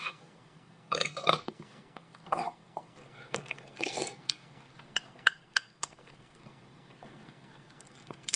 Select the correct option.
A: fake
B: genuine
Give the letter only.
A